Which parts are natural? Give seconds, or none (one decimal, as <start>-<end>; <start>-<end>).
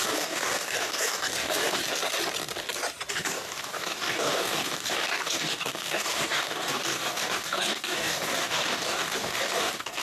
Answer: 1.8-3.1